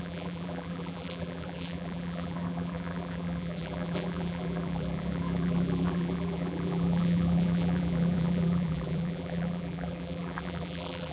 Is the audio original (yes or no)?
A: no